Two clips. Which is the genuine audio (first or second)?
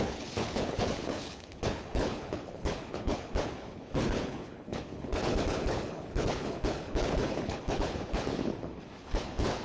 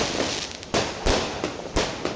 second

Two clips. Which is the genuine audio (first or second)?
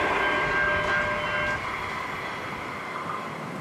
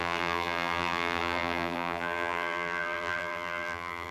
first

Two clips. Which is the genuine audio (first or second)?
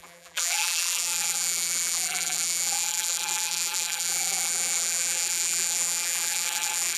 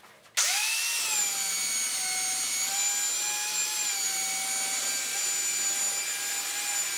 second